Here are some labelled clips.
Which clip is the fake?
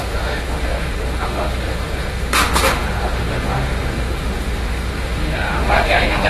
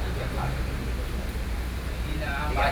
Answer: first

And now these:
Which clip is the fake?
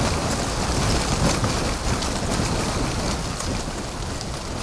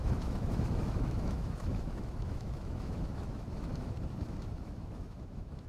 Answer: second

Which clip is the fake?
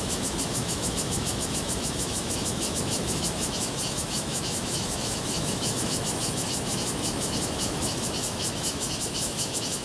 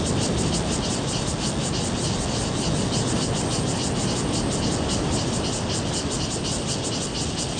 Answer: first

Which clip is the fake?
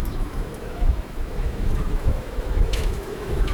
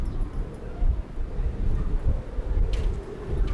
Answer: first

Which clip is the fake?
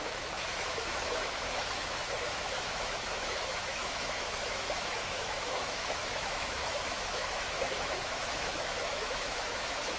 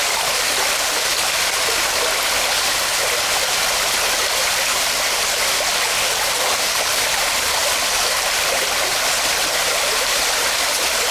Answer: first